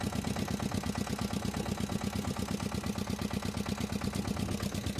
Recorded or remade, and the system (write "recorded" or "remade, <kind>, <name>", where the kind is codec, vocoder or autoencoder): recorded